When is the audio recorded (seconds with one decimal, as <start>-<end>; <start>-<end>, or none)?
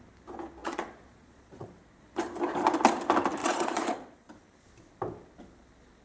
0.0-0.6; 2.2-3.4; 4.3-6.0